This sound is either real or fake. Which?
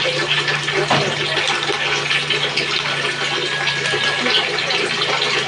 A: real